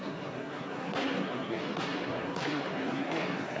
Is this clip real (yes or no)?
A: no